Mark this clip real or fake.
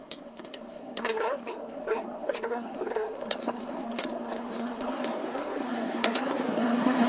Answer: fake